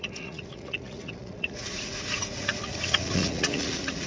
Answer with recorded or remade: remade